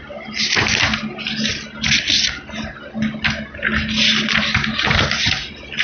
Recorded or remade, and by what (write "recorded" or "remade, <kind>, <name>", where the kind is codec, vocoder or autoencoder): recorded